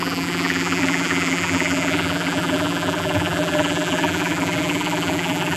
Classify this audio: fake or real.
fake